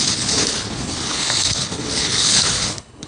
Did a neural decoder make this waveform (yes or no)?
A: yes